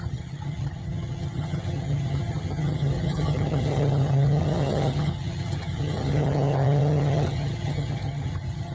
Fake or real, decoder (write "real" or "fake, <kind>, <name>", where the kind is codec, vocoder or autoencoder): fake, vocoder, HiFi-GAN